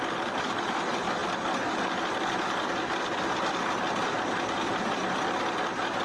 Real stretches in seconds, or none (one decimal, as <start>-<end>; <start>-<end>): 0.0-6.0